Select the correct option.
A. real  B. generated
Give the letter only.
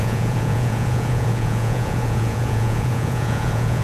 B